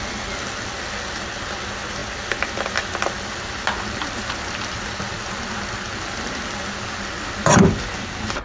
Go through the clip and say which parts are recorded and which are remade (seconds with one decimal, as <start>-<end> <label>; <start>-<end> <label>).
0.0-8.4 recorded